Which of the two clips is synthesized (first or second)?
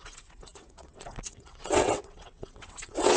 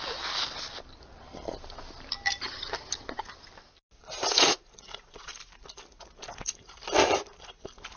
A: first